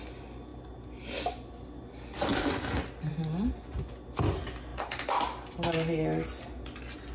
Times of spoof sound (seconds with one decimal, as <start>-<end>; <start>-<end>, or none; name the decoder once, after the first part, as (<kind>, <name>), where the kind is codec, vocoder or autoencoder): none